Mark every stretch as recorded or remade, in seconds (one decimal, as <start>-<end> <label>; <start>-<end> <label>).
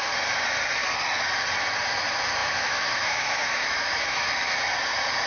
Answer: 0.0-2.4 recorded; 2.4-4.5 remade; 4.5-5.3 recorded